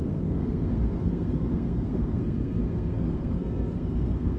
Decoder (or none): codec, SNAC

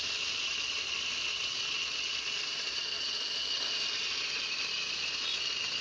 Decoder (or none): none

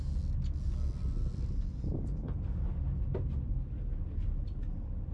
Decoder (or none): none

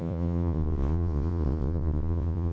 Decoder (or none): vocoder, Vocos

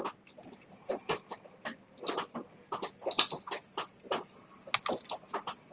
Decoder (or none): none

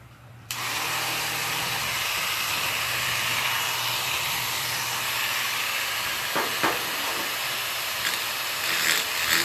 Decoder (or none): vocoder, BigVGAN v2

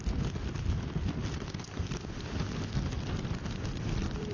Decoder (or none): vocoder, BigVGAN v2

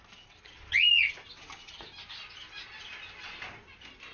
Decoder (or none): none